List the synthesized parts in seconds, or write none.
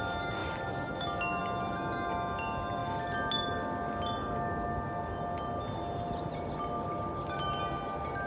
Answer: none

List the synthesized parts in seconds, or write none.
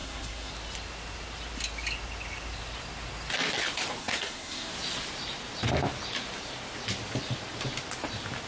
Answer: 0.0-0.5 (codec, SNAC); 4.0-4.7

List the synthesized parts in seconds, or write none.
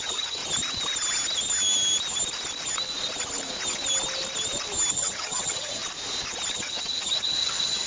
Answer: 0.0-0.4 (vocoder, HiFi-GAN); 4.9-5.8; 6.5-7.9